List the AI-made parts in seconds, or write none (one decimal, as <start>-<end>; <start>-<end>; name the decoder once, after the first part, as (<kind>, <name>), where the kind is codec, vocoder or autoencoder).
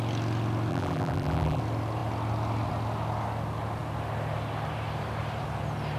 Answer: 0.7-1.6 (vocoder, BigVGAN v2)